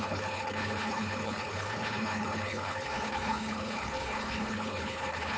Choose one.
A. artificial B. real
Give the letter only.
A